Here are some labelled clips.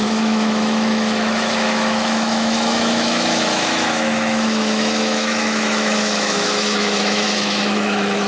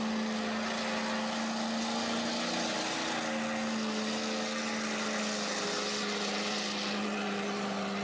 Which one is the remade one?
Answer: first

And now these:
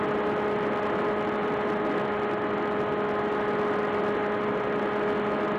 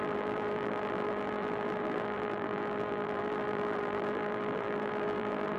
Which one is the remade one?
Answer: second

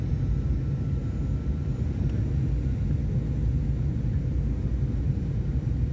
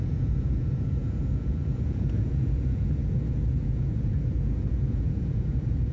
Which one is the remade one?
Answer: second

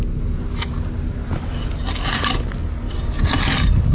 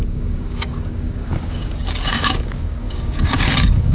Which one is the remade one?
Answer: second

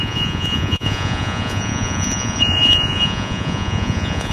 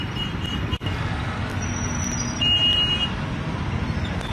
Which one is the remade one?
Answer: first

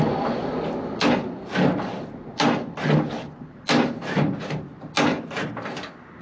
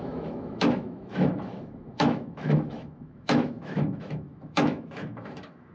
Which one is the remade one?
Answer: second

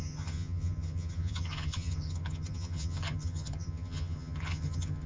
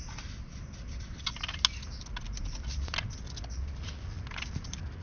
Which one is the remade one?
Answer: first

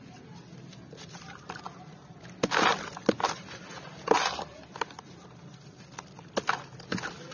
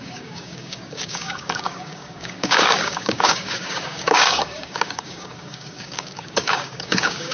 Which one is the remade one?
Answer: second